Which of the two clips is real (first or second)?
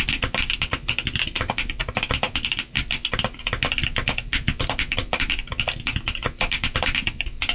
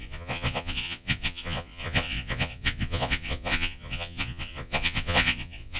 first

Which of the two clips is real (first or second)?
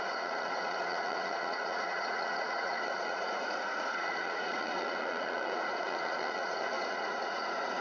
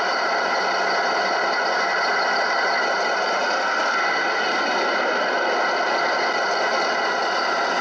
second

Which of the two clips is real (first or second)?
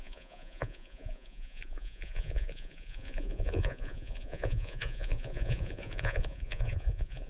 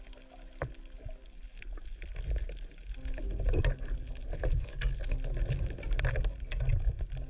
second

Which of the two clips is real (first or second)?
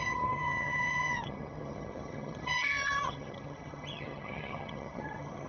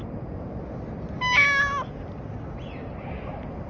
second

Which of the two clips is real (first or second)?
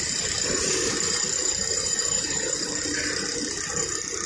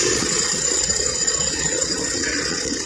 first